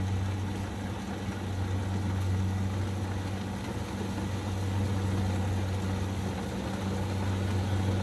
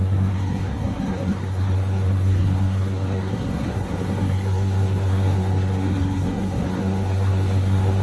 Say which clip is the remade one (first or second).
second